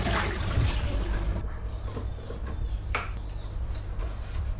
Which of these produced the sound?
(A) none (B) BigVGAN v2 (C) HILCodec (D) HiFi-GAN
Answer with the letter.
B